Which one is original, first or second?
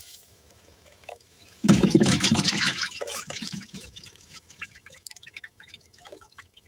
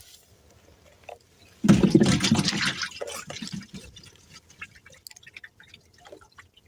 second